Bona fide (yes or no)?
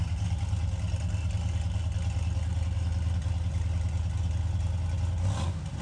yes